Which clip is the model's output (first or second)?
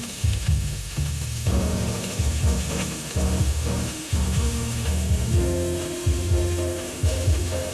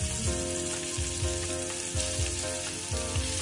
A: first